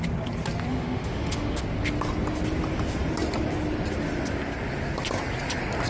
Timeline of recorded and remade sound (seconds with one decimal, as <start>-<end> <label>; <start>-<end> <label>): 0.0-0.7 recorded; 0.7-1.6 remade; 1.6-5.9 recorded